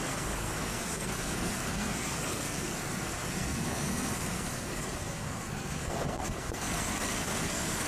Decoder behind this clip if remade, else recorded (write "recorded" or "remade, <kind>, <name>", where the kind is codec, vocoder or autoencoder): remade, codec, SNAC